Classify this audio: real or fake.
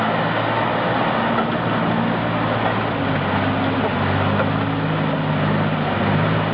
real